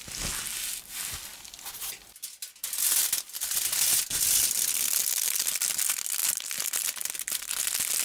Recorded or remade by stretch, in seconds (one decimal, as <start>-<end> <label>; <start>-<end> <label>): 0.0-8.0 recorded

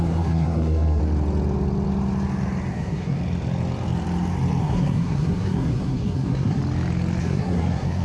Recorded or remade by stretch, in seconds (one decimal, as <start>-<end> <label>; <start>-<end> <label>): 0.0-1.0 remade; 1.0-2.7 recorded; 2.7-3.2 remade; 3.2-4.6 recorded; 4.6-6.6 remade; 6.6-7.2 recorded; 7.2-8.0 remade

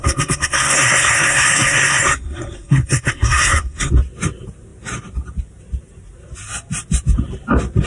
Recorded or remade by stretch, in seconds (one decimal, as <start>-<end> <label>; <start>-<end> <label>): 0.0-3.9 remade; 3.9-7.9 recorded

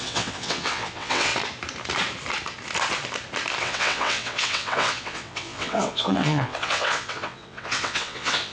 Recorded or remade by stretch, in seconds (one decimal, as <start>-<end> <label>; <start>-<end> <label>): 0.0-1.3 remade; 1.3-3.6 recorded; 3.6-8.5 remade

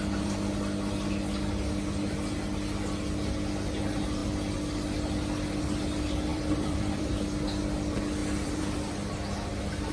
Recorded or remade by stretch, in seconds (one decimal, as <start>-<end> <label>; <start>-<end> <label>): 0.0-6.3 recorded; 6.3-7.1 remade; 7.1-8.2 recorded; 8.2-9.1 remade; 9.1-9.9 recorded

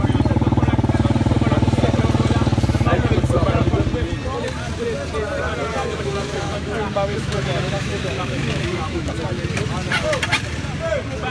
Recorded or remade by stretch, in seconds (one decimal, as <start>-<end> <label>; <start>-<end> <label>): 0.0-5.7 recorded; 5.7-9.1 remade; 9.1-11.3 recorded

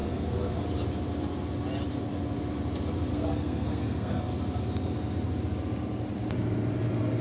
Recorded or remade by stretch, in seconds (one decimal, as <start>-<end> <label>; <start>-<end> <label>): 0.0-0.6 remade; 0.6-3.1 recorded; 3.1-4.3 remade; 4.3-7.2 recorded